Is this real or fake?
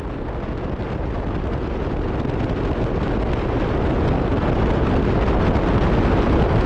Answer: real